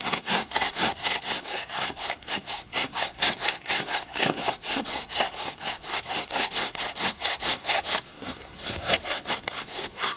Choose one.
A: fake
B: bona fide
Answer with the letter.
A